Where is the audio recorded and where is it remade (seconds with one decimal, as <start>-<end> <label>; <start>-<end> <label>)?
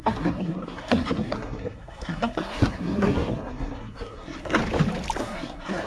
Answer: 0.0-4.6 remade; 4.6-5.2 recorded; 5.2-5.9 remade